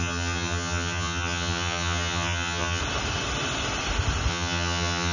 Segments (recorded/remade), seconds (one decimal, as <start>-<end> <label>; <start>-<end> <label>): 0.0-2.8 remade; 2.8-4.3 recorded; 4.3-5.1 remade